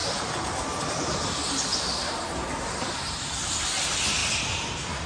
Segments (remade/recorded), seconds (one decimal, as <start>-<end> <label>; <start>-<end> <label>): 0.0-1.1 remade; 1.1-5.1 recorded